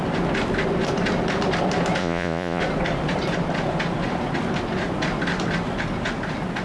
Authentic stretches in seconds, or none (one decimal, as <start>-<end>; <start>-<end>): 0.0-2.0; 2.6-6.6